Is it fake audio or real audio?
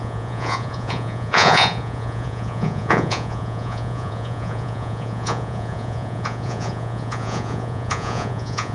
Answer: fake